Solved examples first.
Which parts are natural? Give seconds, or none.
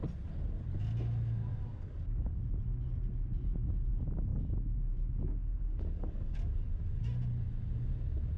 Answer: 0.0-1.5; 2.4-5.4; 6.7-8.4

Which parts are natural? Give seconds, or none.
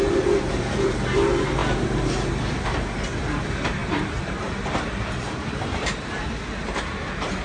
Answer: 1.6-3.2